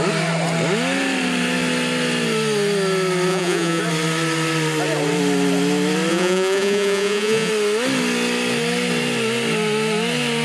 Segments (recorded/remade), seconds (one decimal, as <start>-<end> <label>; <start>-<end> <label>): 0.0-3.3 recorded; 3.3-3.8 remade; 3.8-6.1 recorded; 6.1-7.5 remade; 7.5-10.4 recorded